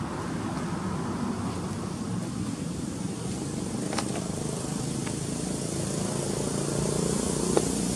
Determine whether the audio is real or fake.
real